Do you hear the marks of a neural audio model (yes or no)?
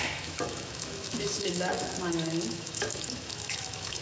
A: yes